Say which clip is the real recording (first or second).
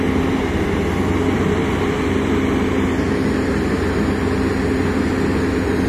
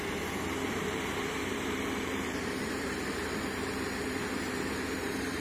first